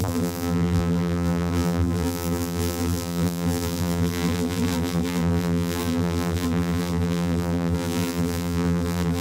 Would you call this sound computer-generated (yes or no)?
yes